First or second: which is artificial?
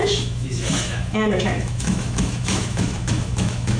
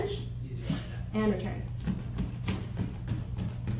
first